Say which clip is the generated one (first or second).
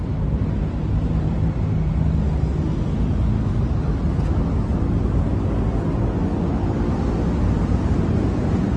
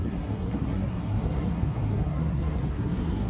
second